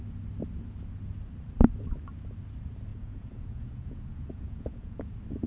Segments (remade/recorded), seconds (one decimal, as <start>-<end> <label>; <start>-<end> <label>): 0.0-2.9 recorded; 2.9-5.1 remade; 5.1-5.5 recorded